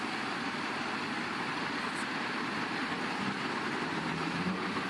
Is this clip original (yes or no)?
no